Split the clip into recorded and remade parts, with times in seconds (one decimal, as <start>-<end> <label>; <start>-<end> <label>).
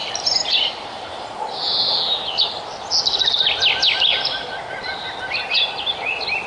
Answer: 0.0-6.5 recorded